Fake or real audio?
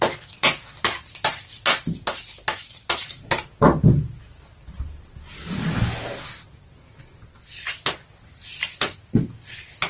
real